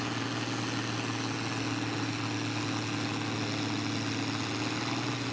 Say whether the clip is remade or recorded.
recorded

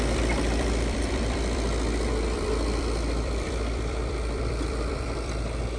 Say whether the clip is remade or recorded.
remade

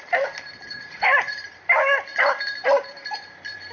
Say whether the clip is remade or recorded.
recorded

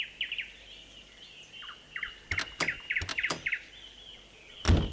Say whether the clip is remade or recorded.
recorded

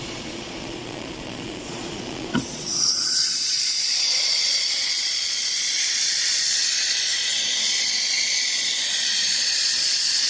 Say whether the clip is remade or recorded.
remade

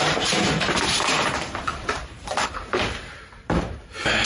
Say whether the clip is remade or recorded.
remade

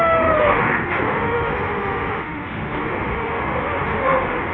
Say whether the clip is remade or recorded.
remade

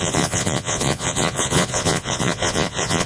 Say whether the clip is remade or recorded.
remade